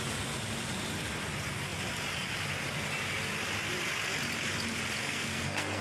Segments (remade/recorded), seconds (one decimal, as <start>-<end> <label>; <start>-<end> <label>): 0.0-5.0 recorded; 5.0-5.8 remade